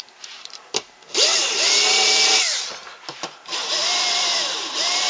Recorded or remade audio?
remade